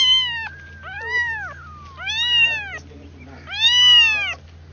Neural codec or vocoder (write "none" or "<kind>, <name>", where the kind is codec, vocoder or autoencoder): none